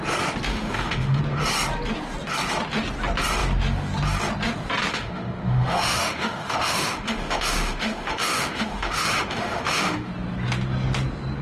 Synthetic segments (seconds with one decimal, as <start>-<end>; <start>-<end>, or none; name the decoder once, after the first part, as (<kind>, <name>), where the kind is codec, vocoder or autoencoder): 0.5-1.2 (autoencoder, DAC-VAE); 4.9-10.1